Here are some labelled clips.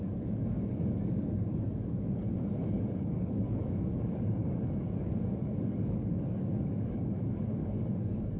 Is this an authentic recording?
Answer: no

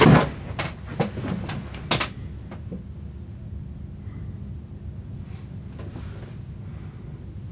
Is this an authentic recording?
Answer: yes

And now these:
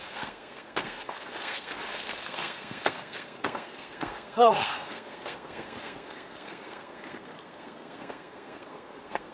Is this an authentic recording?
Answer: no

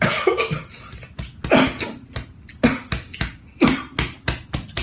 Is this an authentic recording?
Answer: yes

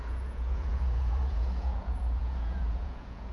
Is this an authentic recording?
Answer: no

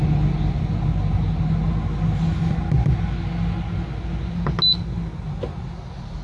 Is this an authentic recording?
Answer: yes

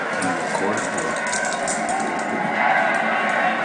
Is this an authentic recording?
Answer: yes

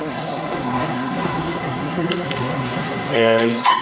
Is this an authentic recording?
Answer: no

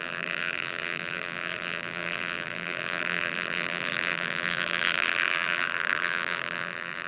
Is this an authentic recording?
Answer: no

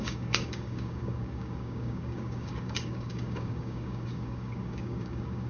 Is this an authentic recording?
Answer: no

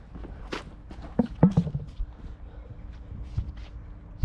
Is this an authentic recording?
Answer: yes